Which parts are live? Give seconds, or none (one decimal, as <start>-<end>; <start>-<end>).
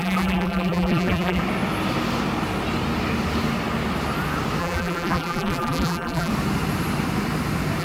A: 1.4-4.6; 6.3-7.8